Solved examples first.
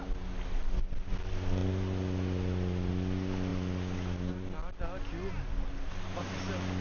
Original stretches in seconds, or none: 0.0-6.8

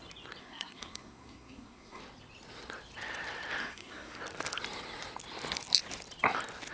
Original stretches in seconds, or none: 0.0-0.4; 2.0-3.6; 4.2-6.7

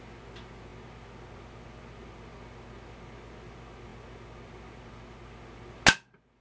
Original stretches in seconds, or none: 0.0-6.4

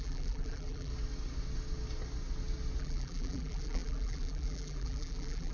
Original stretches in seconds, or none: 0.9-2.8

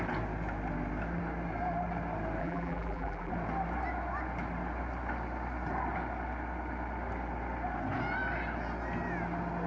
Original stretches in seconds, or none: 0.0-2.4; 3.3-9.7

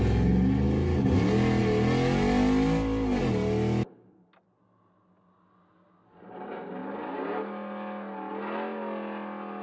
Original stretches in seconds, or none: 0.0-9.6